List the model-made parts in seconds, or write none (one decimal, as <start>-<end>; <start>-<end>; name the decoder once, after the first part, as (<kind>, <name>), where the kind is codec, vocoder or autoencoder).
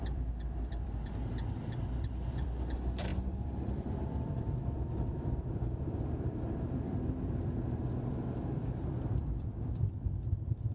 0.0-10.7 (vocoder, BigVGAN v2)